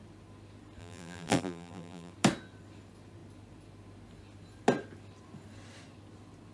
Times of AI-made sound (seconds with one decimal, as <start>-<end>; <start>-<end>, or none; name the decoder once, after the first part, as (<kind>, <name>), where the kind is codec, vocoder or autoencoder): 0.8-2.1 (vocoder, BigVGAN v2)